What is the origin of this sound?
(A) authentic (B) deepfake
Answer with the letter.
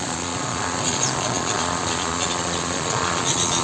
B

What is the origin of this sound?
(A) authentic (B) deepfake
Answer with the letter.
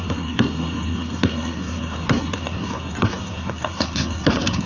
B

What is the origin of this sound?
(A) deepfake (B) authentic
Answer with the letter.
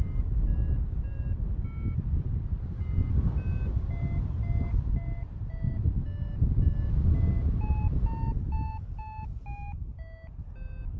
B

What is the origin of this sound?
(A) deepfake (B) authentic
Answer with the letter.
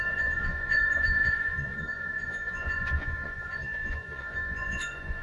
A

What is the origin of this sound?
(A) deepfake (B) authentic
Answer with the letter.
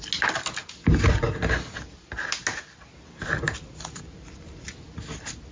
B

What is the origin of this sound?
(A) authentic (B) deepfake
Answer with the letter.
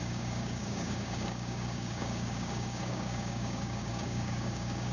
B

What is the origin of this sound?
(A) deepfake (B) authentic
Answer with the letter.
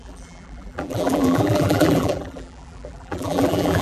A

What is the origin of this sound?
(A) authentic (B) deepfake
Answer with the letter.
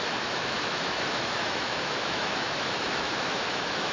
B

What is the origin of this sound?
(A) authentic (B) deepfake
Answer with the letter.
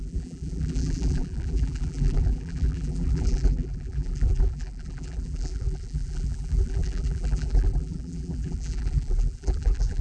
B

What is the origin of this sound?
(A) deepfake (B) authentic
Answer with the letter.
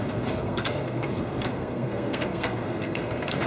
A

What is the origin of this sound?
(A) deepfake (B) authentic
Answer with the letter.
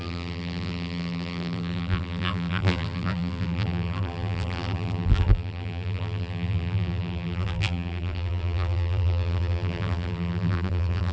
A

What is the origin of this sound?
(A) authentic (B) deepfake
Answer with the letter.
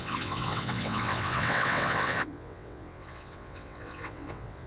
B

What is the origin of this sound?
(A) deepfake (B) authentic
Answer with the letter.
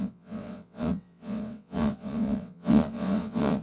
A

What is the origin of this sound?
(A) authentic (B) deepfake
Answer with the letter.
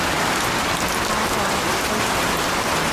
A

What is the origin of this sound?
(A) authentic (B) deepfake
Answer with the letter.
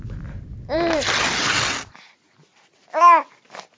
A